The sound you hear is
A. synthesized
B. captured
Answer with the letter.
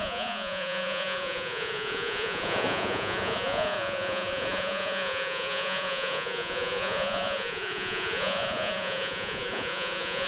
A